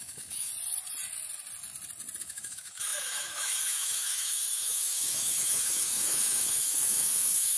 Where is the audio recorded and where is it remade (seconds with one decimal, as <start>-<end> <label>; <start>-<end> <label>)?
0.0-0.5 remade; 0.5-2.2 recorded; 2.2-7.6 remade